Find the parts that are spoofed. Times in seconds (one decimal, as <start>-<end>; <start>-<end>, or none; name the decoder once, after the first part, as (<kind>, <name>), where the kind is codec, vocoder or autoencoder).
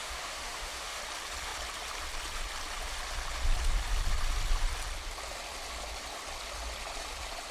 0.0-1.0 (autoencoder, DAC-VAE)